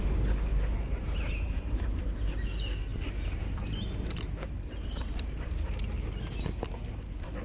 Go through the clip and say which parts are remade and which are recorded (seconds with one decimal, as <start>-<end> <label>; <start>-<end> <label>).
0.0-0.5 recorded; 0.5-2.0 remade; 2.0-2.9 recorded; 2.9-5.9 remade; 5.9-7.4 recorded